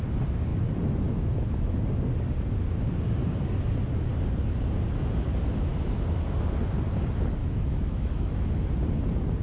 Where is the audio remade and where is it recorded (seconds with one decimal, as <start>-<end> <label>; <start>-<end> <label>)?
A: 0.0-7.4 recorded; 7.4-8.5 remade; 8.5-9.4 recorded